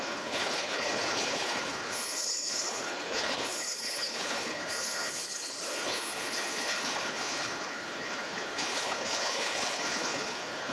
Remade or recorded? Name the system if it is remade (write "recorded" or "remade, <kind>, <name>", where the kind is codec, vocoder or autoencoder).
remade, codec, HILCodec